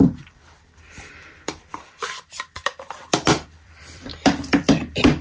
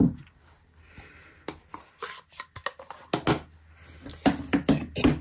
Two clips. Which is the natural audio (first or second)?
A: second